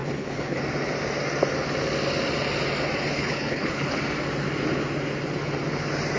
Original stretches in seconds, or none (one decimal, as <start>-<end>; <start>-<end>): 0.6-3.1; 4.0-6.2